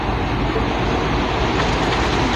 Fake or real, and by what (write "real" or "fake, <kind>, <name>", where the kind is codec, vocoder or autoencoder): real